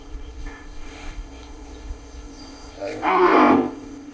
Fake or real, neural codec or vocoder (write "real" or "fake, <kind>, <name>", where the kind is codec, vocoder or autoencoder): fake, codec, ZipCodec